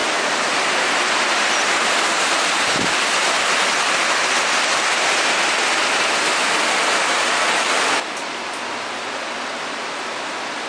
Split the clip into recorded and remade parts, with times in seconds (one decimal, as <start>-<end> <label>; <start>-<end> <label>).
0.0-10.7 recorded